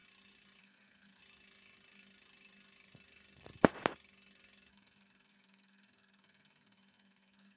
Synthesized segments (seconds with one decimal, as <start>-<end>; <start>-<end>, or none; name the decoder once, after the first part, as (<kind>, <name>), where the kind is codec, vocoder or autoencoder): 0.6-1.2 (codec, SNAC); 4.7-7.6